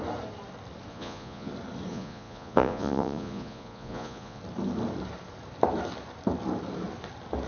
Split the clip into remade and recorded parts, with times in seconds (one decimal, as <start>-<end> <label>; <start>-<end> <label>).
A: 0.0-0.9 recorded; 0.9-1.5 remade; 1.5-1.9 recorded; 1.9-4.4 remade; 4.4-7.5 recorded